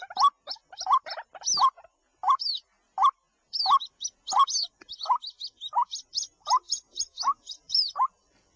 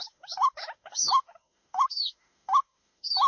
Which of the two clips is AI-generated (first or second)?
second